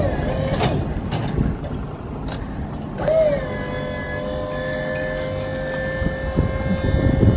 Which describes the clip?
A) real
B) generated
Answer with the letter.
A